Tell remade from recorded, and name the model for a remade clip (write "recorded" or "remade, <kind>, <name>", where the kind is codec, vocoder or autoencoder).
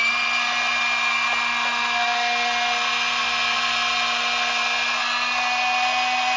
recorded